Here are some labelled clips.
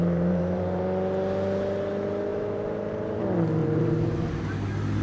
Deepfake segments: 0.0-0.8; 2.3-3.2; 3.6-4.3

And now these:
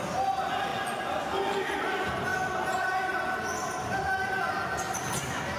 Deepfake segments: none